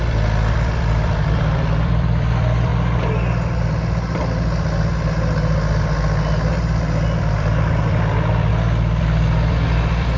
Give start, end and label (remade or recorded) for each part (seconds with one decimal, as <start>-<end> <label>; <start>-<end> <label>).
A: 0.0-2.7 remade; 2.7-7.2 recorded; 7.2-8.5 remade; 8.5-9.0 recorded; 9.0-10.2 remade